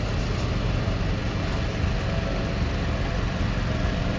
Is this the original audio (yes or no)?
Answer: yes